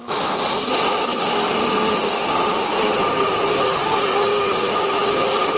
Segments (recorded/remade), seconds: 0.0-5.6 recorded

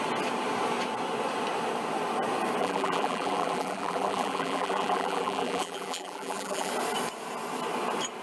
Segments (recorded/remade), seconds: 0.0-2.6 recorded; 2.6-6.7 remade; 6.7-8.2 recorded

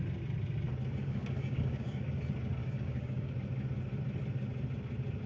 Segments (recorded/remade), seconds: 0.0-1.0 recorded; 1.0-2.0 remade; 2.0-2.6 recorded; 2.6-3.3 remade; 3.3-5.3 recorded

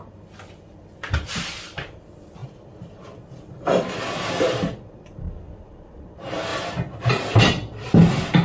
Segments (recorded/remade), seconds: 0.0-6.5 remade; 6.5-7.4 recorded; 7.4-8.4 remade